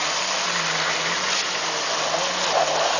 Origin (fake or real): real